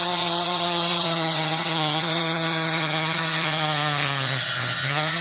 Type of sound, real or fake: fake